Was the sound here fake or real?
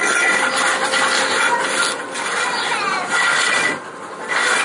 real